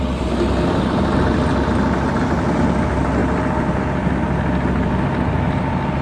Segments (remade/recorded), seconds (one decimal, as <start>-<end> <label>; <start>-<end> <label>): 0.0-6.0 recorded